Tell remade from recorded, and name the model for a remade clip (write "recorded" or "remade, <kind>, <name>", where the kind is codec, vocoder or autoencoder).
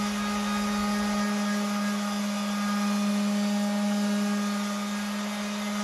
recorded